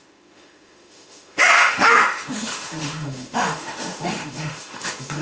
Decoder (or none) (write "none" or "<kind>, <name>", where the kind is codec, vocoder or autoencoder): autoencoder, DAC-VAE